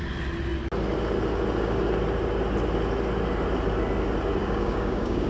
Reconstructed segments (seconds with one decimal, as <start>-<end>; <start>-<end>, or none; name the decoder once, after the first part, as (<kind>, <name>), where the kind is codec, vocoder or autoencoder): 4.4-5.3 (codec, DAC)